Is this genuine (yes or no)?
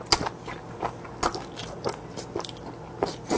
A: yes